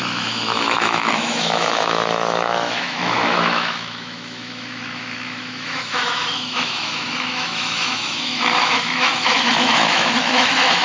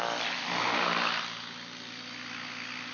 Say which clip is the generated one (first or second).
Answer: first